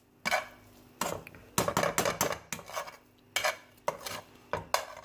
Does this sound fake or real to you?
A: real